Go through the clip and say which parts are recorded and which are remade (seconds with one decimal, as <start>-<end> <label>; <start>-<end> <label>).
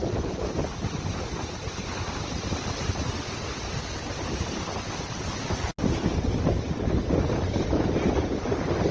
0.0-8.9 recorded